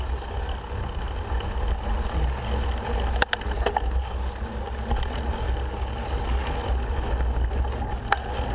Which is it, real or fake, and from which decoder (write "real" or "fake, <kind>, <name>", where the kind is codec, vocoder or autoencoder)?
real